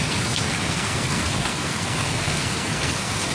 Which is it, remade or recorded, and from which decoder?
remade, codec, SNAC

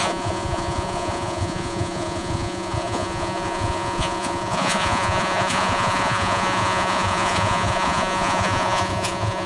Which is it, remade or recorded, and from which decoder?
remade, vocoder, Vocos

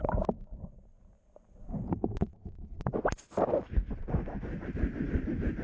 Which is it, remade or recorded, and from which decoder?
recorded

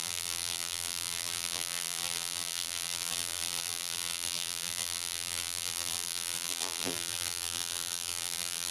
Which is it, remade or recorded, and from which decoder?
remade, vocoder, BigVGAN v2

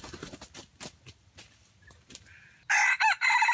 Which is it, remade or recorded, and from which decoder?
recorded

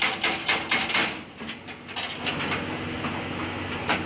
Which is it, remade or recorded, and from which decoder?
recorded